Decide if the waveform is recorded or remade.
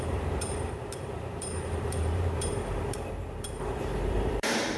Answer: remade